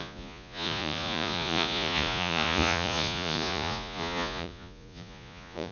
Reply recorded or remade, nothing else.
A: remade